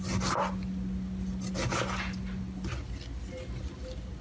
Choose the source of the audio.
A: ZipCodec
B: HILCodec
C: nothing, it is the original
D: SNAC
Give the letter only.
C